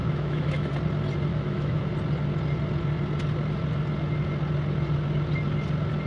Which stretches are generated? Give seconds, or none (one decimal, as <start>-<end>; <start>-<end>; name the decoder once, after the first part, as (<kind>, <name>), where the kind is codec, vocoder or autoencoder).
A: 0.0-0.7 (autoencoder, DAC-VAE); 1.3-1.9